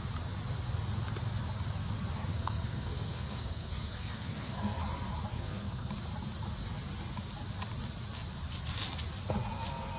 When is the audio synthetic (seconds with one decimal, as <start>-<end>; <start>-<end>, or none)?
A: 2.3-4.8; 5.3-5.9